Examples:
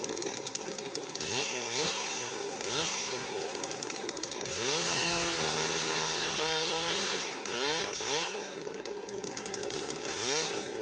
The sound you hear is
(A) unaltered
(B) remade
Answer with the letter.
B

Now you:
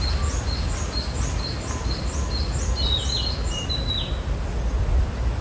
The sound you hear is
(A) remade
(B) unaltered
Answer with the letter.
B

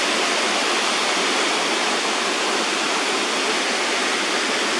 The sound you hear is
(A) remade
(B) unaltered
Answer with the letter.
B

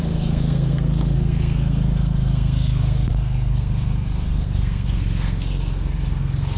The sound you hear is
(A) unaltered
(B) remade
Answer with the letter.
B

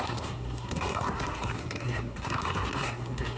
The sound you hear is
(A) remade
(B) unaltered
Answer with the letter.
A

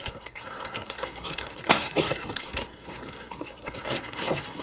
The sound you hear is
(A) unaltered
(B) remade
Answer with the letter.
B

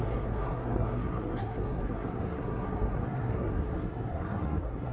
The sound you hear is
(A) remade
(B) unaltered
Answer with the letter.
A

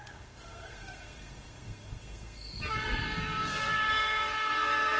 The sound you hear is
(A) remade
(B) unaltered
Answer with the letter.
A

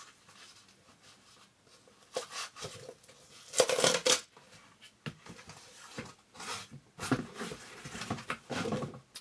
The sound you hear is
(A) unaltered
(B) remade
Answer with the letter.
A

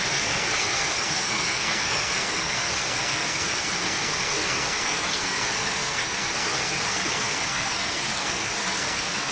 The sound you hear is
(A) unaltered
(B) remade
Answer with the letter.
B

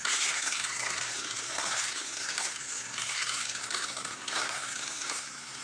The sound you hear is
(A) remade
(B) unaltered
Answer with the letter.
A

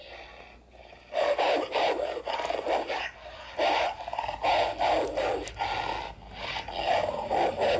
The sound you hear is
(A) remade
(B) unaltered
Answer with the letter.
B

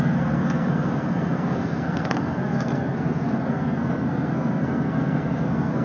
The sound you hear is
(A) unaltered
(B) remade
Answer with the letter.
B